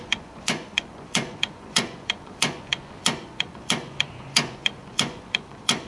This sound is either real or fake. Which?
fake